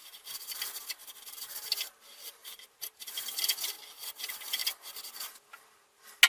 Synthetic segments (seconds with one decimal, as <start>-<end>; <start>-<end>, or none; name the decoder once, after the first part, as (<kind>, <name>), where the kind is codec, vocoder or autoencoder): 0.0-0.6 (vocoder, BigVGAN v2); 1.0-1.5; 2.4-3.5